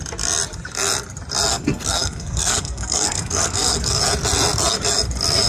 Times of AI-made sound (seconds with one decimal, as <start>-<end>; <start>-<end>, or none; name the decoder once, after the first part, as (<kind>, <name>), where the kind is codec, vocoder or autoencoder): 1.5-4.0 (codec, SNAC)